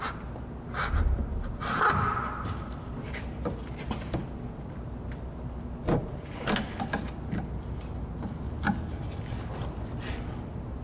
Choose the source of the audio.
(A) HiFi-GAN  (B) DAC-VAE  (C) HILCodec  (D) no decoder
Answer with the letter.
D